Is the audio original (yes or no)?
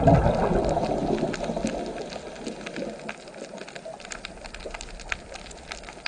yes